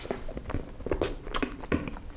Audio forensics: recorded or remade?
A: recorded